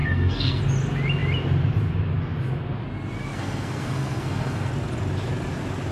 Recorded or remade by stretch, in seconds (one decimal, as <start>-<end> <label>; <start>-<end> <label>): 0.0-0.6 remade; 0.6-3.3 recorded; 3.3-4.7 remade; 4.7-5.9 recorded